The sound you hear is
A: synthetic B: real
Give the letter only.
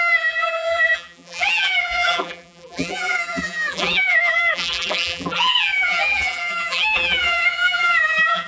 A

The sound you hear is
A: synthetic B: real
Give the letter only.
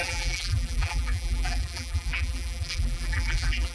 A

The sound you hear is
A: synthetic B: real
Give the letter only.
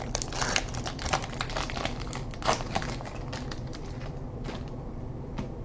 A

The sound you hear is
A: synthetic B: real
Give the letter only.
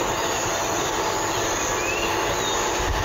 B